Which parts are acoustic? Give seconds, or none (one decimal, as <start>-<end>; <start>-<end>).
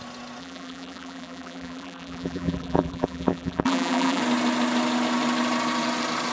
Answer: 0.0-0.4; 4.2-6.3